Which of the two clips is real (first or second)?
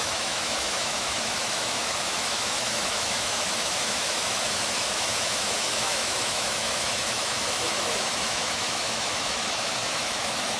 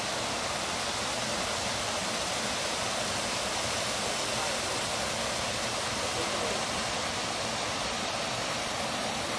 second